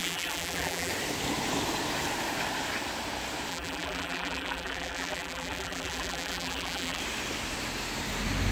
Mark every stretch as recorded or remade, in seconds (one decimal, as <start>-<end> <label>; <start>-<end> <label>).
0.0-0.9 remade; 0.9-3.5 recorded; 3.5-7.0 remade; 7.0-8.5 recorded